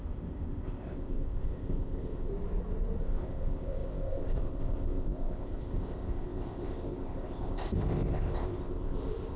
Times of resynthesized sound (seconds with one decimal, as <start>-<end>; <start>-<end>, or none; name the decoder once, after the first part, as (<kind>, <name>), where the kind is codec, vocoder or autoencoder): 0.0-2.3 (codec, ZipCodec); 3.0-9.4